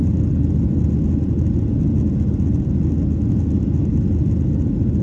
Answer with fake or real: real